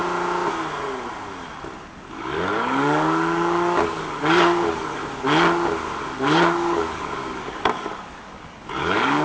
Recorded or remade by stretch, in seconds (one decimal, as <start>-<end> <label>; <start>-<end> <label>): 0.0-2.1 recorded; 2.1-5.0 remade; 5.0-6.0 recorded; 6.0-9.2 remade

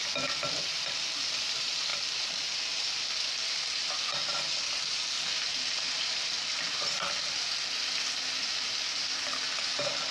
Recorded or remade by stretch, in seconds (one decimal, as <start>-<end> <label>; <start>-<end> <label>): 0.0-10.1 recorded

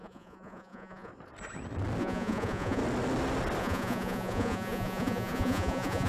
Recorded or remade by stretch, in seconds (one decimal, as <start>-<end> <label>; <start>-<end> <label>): 0.0-1.1 remade; 1.1-2.0 recorded; 2.0-2.8 remade; 2.8-3.6 recorded; 3.6-6.1 remade

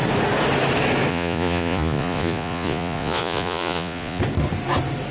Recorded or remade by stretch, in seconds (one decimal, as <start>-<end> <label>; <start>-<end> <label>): 0.0-1.1 recorded; 1.1-4.2 remade; 4.2-5.1 recorded

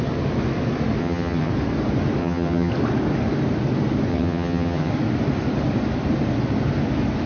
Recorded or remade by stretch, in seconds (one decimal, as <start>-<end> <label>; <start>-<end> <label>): 0.0-1.0 recorded; 1.0-1.5 remade; 1.5-2.2 recorded; 2.2-2.7 remade; 2.7-4.1 recorded; 4.1-4.9 remade; 4.9-7.3 recorded

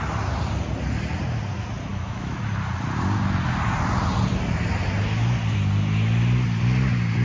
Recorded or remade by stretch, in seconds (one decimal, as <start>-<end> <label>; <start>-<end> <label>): 0.0-1.9 recorded; 1.9-2.4 remade; 2.4-7.2 recorded